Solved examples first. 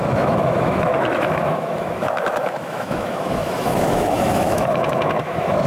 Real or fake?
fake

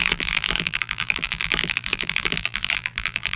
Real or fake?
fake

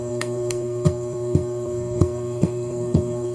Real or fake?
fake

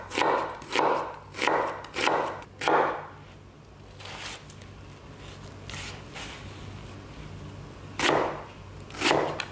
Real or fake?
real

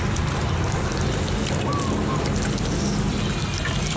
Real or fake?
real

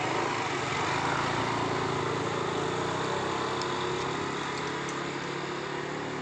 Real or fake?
real